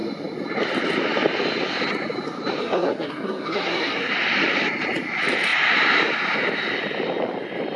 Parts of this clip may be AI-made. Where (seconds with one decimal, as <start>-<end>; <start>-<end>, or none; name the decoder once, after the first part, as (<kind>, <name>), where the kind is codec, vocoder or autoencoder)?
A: 2.6-4.1 (codec, SNAC)